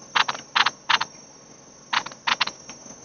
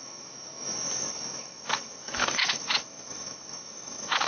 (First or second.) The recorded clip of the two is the first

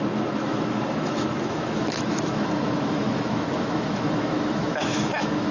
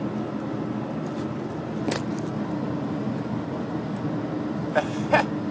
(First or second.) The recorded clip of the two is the second